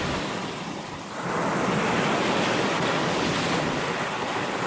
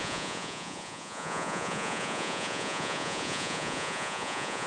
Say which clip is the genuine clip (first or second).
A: first